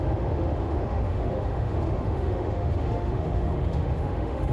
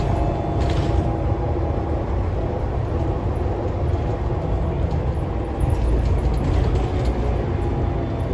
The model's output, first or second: first